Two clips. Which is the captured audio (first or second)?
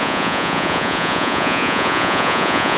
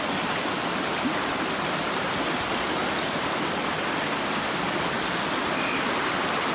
second